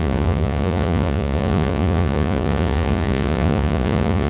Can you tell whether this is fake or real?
fake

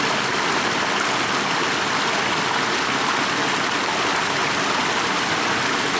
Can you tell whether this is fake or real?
real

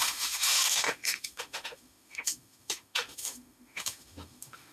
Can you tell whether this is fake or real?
fake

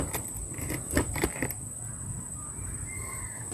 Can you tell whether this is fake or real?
fake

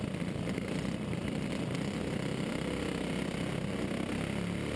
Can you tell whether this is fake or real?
real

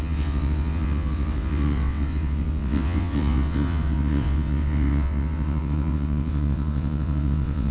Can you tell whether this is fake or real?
fake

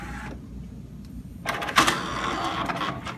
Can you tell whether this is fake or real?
real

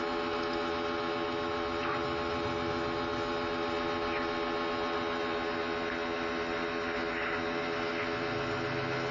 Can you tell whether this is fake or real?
real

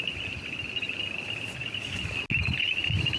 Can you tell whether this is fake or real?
real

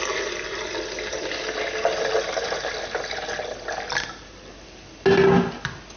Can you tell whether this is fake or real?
real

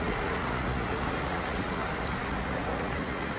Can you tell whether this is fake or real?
fake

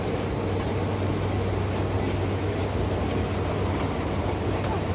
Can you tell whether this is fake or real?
real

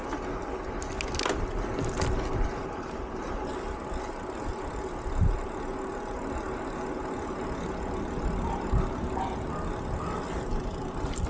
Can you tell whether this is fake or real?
real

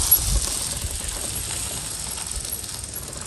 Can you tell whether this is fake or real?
real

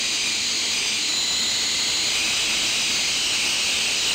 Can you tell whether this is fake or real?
real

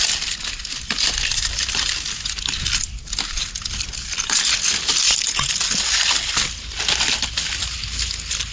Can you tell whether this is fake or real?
real